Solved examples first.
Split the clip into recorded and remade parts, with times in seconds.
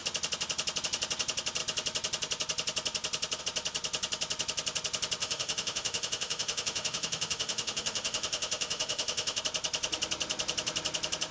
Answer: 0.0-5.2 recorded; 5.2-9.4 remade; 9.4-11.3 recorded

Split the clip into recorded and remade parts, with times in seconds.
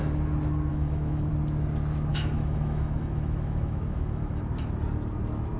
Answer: 0.0-0.7 recorded; 0.7-1.3 remade; 1.3-2.1 recorded; 2.1-4.4 remade; 4.4-5.6 recorded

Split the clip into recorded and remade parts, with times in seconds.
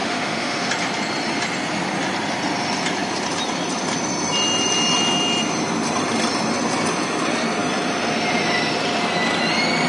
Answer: 0.0-0.7 remade; 0.7-9.9 recorded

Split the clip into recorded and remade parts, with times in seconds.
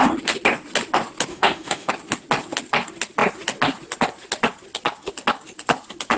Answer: 0.0-1.3 recorded; 1.3-1.9 remade; 1.9-6.2 recorded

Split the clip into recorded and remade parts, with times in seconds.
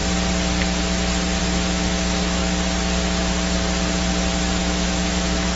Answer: 0.0-1.4 recorded; 1.4-2.4 remade; 2.4-4.6 recorded; 4.6-5.6 remade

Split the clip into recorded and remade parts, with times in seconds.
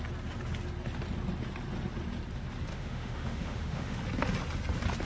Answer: 0.0-2.7 recorded; 2.7-4.0 remade; 4.0-5.0 recorded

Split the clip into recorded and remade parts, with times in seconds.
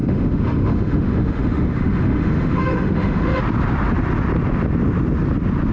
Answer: 0.0-3.4 remade; 3.4-5.7 recorded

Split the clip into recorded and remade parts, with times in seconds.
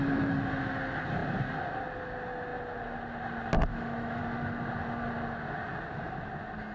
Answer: 0.0-3.7 recorded; 3.7-4.2 remade; 4.2-6.7 recorded